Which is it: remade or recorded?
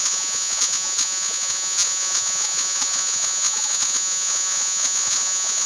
remade